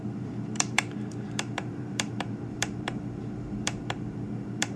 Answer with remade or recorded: remade